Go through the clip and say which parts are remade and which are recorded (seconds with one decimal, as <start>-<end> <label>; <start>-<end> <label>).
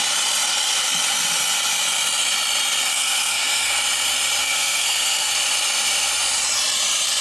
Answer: 0.0-2.9 recorded; 2.9-3.7 remade; 3.7-4.4 recorded; 4.4-5.3 remade; 5.3-7.2 recorded